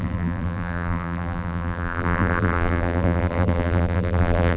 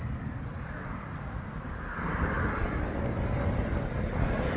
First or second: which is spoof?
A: first